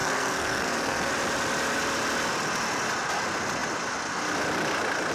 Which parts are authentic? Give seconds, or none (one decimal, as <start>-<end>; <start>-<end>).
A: 1.1-5.1